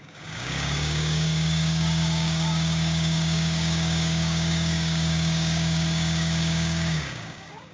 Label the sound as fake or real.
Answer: fake